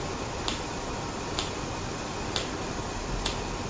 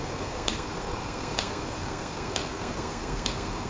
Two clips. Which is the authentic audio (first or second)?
first